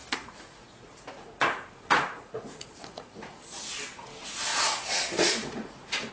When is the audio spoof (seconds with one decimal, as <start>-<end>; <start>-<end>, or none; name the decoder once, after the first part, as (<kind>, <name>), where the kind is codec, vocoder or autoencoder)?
0.0-3.4 (vocoder, Vocos); 4.5-6.1